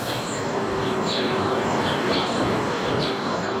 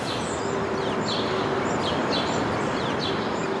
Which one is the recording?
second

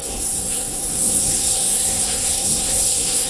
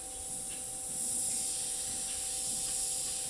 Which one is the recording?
second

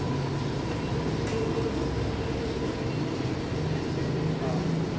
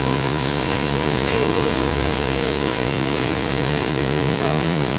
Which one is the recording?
first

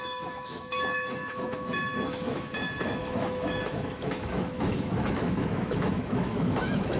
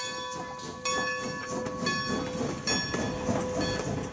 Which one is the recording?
second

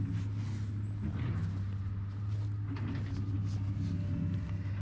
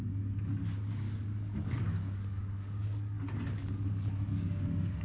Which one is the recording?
first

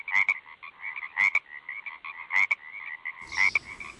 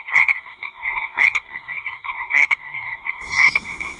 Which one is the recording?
first